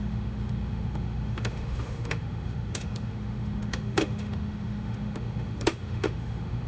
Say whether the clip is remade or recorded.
remade